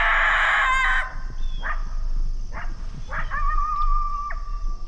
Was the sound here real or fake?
real